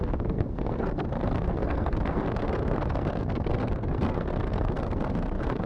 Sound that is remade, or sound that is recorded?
remade